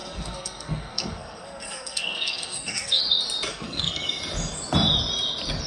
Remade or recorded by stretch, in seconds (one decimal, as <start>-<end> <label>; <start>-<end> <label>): 0.0-3.0 remade; 3.0-3.5 recorded; 3.5-4.0 remade; 4.0-5.7 recorded